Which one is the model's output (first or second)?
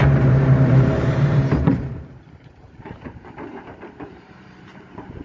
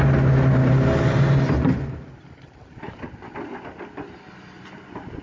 first